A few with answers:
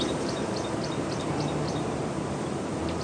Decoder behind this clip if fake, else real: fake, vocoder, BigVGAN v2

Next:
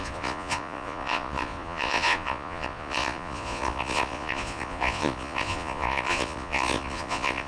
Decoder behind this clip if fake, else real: fake, vocoder, Vocos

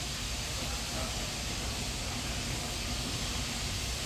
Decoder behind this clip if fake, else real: real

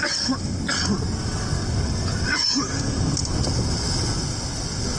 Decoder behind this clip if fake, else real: real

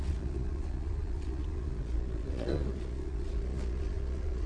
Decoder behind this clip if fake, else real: fake, vocoder, Vocos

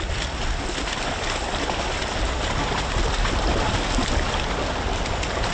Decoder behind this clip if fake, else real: real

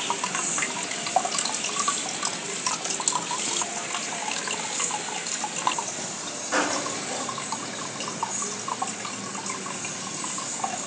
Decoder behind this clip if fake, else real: real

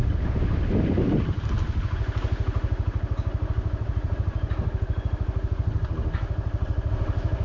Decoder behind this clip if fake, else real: real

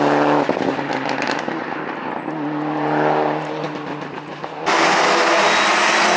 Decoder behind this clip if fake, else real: real